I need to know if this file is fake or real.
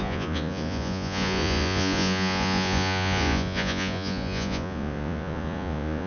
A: fake